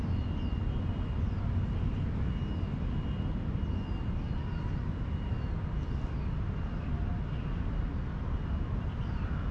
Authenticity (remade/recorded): recorded